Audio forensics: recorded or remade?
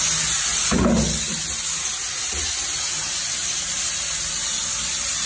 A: recorded